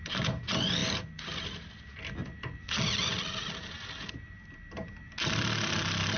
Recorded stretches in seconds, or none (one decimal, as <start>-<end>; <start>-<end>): 0.0-6.2